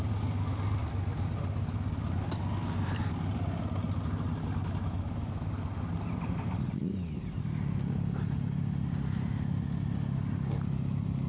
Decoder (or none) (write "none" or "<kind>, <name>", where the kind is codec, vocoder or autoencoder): none